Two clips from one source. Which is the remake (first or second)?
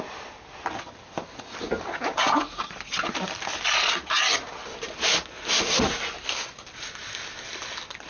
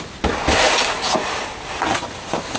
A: second